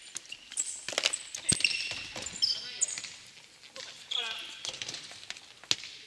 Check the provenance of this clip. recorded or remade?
recorded